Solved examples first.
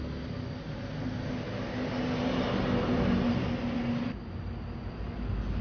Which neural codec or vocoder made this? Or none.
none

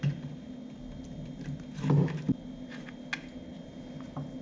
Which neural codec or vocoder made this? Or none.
none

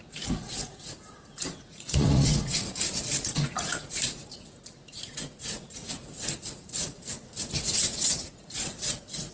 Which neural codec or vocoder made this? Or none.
vocoder, Vocos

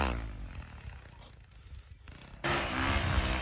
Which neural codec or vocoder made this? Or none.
none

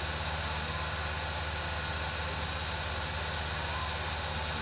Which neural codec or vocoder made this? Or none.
none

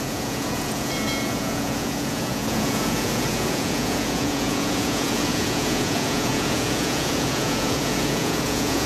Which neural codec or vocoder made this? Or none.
vocoder, Vocos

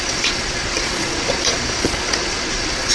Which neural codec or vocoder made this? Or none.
vocoder, Vocos